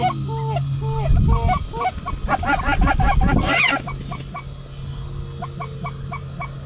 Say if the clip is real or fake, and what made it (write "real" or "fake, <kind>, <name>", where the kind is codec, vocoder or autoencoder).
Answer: real